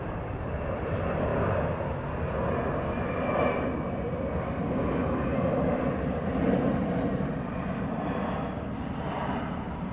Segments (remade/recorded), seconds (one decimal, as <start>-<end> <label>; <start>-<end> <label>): 0.0-1.3 remade; 1.3-6.4 recorded; 6.4-9.9 remade